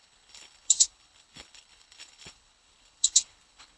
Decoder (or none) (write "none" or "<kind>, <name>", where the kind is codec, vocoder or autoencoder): codec, HILCodec